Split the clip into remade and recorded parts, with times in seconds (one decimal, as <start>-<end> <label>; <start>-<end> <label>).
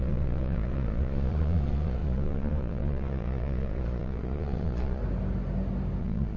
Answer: 0.0-5.0 remade; 5.0-6.0 recorded; 6.0-6.4 remade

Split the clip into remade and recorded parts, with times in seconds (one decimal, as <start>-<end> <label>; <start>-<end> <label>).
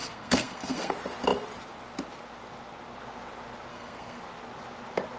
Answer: 0.0-0.9 remade; 0.9-3.7 recorded; 3.7-4.2 remade; 4.2-5.2 recorded